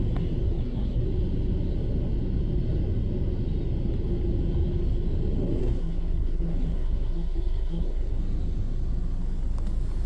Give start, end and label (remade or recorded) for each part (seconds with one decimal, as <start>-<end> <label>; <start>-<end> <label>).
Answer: 0.0-0.5 recorded; 0.5-1.0 remade; 1.0-5.6 recorded; 5.6-8.2 remade; 8.2-10.1 recorded